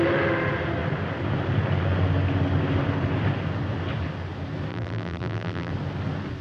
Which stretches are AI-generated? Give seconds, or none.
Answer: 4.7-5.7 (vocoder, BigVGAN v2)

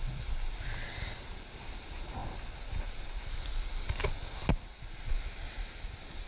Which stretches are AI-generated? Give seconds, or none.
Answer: none